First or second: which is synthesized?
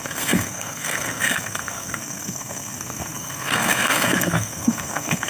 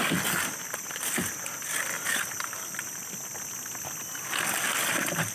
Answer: first